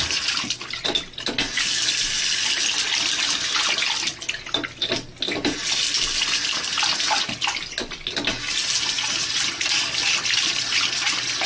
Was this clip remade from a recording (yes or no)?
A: no